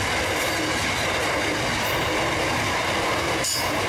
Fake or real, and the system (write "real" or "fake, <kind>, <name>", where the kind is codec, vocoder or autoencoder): real